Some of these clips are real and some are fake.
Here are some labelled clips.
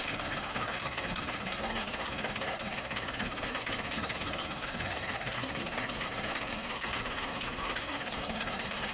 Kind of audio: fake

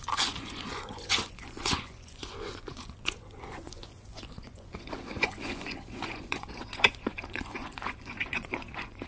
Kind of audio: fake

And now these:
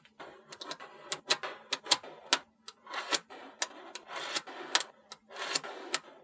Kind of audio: real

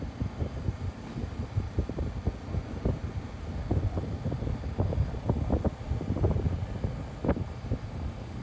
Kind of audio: real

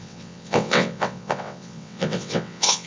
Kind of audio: fake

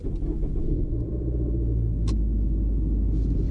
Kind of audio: real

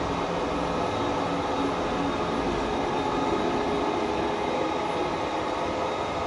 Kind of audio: real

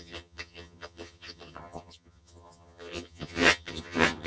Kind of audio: fake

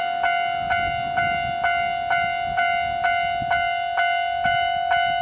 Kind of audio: real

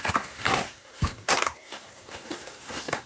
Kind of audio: fake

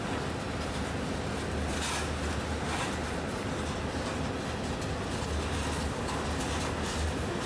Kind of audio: real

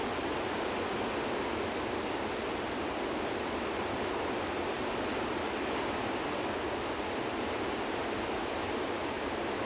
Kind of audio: real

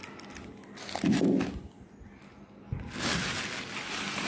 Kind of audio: real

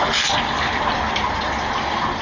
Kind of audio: real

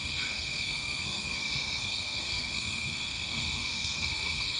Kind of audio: fake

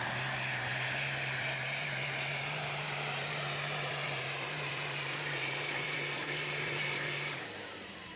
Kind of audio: fake